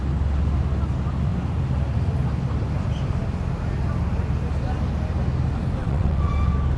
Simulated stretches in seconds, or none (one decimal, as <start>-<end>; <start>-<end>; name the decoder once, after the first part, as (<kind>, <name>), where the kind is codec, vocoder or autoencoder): 5.8-6.3 (vocoder, WaveNeXt)